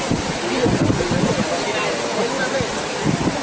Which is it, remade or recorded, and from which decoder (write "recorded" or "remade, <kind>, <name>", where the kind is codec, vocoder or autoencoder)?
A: recorded